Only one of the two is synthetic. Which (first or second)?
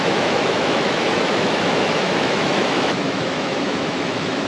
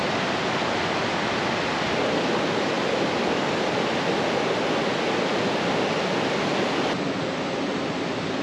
first